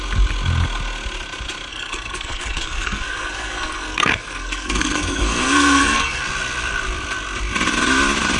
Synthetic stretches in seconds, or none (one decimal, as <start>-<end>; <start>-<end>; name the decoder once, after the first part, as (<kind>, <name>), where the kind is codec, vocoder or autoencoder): 1.7-6.2 (codec, SNAC)